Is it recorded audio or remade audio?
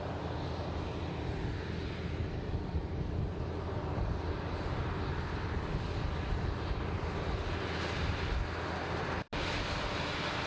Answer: recorded